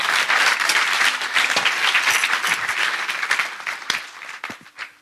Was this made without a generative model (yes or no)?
yes